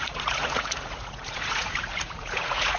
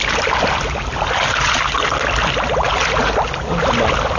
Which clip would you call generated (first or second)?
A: first